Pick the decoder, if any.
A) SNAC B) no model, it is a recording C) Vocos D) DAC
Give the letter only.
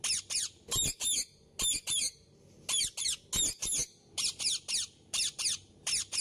B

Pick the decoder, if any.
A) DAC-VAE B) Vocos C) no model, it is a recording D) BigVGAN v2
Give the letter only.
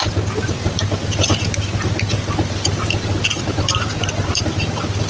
C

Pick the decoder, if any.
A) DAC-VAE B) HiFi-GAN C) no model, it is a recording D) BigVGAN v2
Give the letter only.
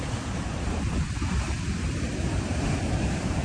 D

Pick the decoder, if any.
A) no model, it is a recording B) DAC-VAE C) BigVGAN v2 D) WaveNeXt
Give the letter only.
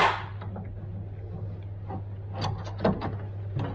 A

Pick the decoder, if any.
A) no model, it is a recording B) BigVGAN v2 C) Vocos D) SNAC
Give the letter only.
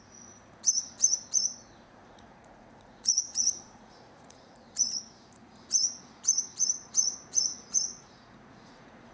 C